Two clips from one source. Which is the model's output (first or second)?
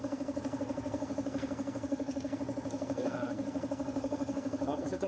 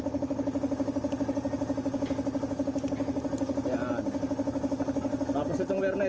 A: first